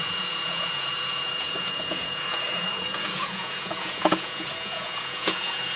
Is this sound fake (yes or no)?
yes